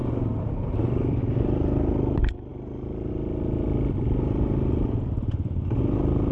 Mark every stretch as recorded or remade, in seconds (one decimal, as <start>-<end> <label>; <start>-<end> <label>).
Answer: 0.0-1.2 remade; 1.2-6.3 recorded